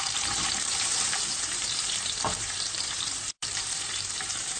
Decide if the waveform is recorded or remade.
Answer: remade